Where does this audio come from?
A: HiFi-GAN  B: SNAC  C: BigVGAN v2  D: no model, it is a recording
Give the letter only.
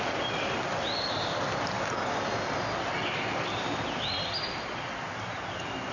D